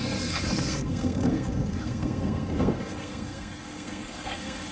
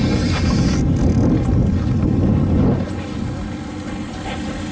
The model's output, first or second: first